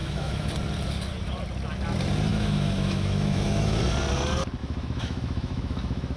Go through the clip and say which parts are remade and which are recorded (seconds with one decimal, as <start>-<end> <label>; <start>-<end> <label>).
0.0-0.5 remade; 0.5-2.3 recorded; 2.3-3.8 remade; 3.8-4.6 recorded; 4.6-6.2 remade